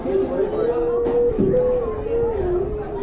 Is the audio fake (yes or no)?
no